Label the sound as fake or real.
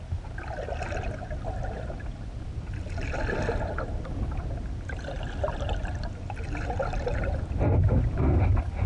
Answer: real